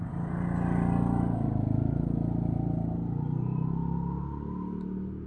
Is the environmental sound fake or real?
real